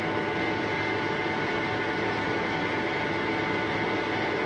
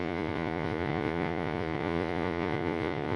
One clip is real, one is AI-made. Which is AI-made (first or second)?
second